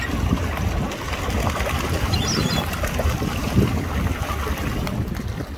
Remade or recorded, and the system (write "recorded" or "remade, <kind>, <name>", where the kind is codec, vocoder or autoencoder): recorded